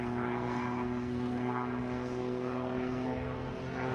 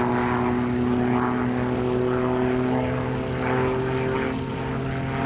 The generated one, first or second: first